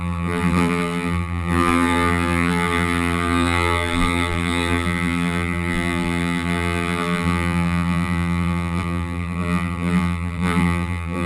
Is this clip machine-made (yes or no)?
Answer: yes